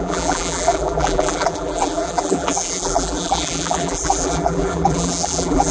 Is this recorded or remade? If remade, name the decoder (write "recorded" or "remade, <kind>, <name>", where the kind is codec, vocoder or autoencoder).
remade, vocoder, BigVGAN v2